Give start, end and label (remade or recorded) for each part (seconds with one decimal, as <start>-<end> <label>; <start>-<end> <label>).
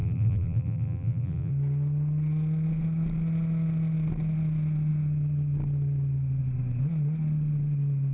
0.0-1.5 remade; 1.5-8.1 recorded